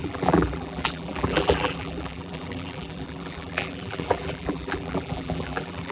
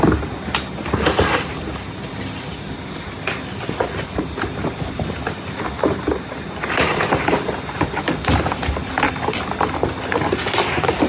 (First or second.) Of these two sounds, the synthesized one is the first